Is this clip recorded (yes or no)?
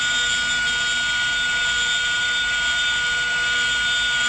yes